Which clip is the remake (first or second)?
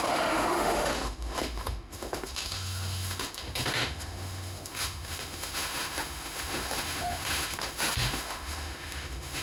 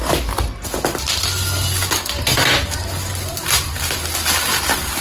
first